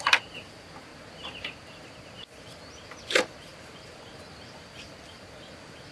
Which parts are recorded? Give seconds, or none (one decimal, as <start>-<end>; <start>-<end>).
0.0-5.9